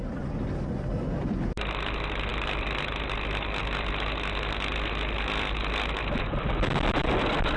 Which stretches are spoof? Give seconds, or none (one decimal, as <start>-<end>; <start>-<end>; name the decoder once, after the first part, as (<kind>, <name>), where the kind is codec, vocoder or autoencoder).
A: none